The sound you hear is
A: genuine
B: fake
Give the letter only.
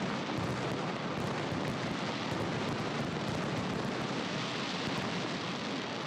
A